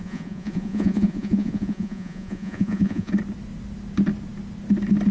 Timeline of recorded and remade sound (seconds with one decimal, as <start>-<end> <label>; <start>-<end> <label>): 0.0-3.1 remade; 3.1-5.1 recorded